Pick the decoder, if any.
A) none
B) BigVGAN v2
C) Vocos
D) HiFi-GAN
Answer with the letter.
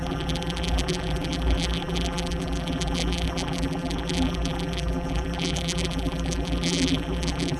B